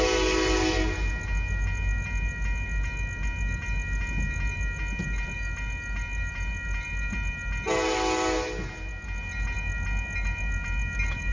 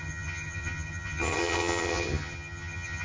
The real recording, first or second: first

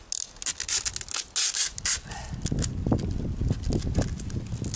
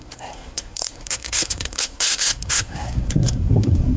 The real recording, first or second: first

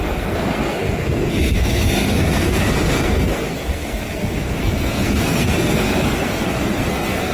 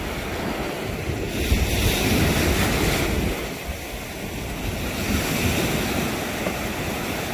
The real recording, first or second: second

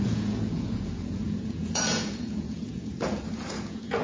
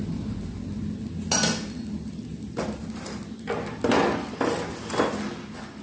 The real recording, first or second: second